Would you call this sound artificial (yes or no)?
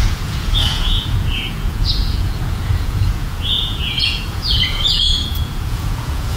yes